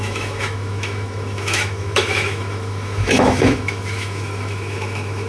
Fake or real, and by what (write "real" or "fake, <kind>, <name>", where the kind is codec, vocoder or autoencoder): fake, autoencoder, DAC-VAE